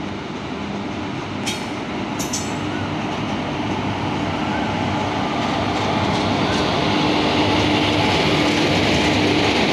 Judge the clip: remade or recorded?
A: recorded